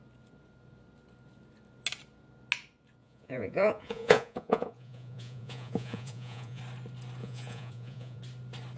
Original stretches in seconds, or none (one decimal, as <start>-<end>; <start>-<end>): 0.0-3.0; 6.6-7.2; 8.2-8.8